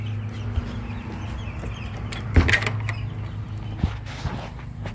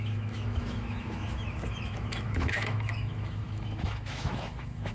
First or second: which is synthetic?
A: second